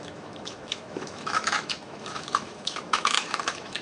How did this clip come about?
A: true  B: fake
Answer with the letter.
B